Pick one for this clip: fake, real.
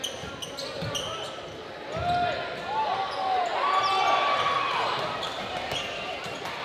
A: real